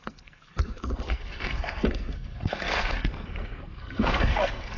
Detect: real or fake fake